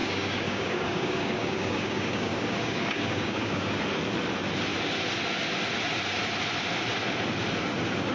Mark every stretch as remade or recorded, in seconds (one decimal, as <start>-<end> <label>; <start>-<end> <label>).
0.0-3.8 remade; 3.8-8.1 recorded